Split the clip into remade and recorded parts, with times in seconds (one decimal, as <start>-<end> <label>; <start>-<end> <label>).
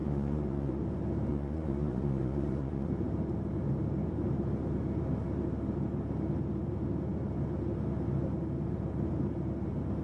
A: 0.0-0.8 remade; 0.8-1.3 recorded; 1.3-2.9 remade; 2.9-10.0 recorded